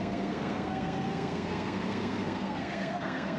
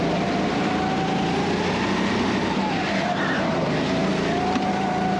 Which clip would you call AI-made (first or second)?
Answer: first